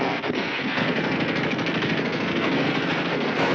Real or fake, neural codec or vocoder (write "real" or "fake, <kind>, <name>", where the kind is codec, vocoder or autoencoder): fake, codec, SNAC